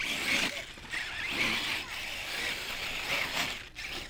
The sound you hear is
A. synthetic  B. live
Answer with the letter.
B